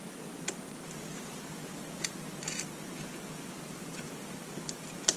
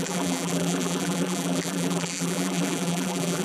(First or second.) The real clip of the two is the first